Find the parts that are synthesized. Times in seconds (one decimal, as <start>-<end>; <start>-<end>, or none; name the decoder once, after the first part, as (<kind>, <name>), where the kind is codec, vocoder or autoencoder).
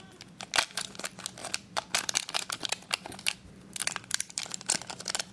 1.4-3.2 (vocoder, BigVGAN v2); 3.8-4.8